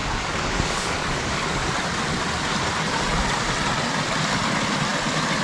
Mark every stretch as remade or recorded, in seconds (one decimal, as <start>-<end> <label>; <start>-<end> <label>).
0.0-1.8 remade; 1.8-5.4 recorded